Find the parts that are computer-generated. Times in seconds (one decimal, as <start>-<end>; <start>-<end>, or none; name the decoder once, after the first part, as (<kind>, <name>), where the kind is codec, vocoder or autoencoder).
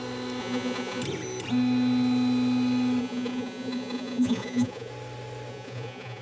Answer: 0.4-1.0 (vocoder, Vocos); 3.0-4.9; 5.5-6.2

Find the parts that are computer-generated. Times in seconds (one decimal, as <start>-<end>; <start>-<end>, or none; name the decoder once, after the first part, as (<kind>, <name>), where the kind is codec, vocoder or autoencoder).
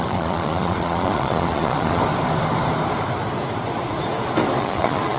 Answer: 0.0-2.0 (vocoder, Vocos); 4.6-5.2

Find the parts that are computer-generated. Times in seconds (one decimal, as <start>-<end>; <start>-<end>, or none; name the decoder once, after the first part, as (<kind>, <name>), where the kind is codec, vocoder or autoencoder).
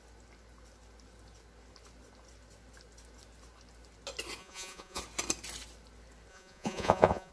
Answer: 4.4-5.0 (vocoder, Vocos); 6.3-7.3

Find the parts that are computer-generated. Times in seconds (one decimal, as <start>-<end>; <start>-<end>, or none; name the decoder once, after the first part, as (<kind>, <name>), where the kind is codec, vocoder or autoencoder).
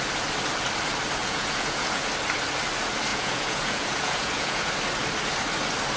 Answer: 1.2-2.1 (vocoder, Vocos); 3.1-4.7